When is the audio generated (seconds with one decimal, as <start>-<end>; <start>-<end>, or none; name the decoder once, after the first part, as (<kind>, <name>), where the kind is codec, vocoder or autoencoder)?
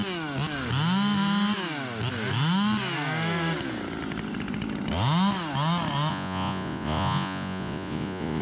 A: 6.1-8.4 (vocoder, Vocos)